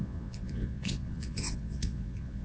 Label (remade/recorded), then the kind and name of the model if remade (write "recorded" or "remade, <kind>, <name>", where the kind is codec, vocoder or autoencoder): remade, vocoder, Vocos